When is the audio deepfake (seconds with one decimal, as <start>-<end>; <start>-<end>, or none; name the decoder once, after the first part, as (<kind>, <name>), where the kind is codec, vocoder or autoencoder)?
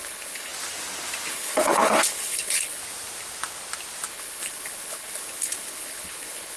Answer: 0.0-0.5 (codec, HILCodec); 1.3-2.8; 4.1-6.6